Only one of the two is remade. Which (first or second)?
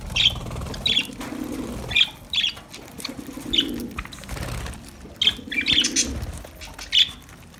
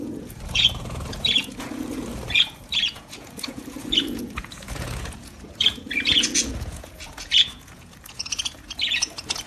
second